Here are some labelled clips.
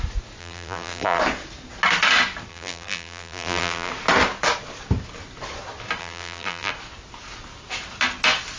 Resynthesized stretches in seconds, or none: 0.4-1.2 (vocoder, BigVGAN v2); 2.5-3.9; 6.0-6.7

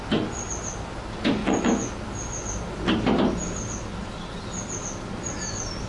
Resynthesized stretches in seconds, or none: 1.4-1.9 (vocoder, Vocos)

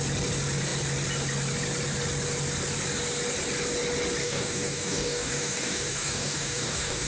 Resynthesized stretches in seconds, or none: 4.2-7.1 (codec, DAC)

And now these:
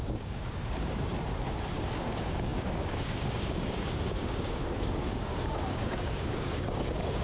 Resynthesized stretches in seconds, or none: 0.0-1.1 (codec, DAC); 1.7-7.2

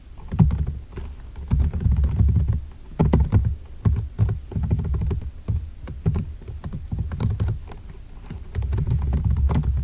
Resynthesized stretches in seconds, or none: none

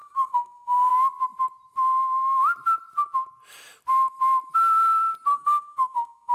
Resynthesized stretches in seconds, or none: 0.0-0.9 (codec, SNAC); 5.3-6.3